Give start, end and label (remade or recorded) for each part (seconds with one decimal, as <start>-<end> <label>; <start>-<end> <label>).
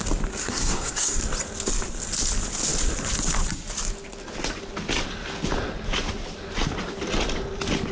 0.0-0.4 recorded; 0.4-1.2 remade; 1.2-7.9 recorded